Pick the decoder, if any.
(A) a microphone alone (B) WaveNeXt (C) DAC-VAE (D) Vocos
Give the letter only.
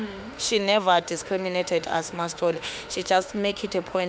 C